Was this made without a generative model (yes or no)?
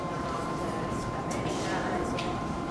no